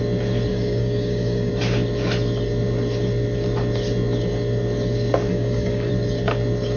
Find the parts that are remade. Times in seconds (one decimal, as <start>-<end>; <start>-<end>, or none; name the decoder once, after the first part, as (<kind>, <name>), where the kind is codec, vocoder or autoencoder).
0.5-1.5 (codec, DAC); 5.3-5.9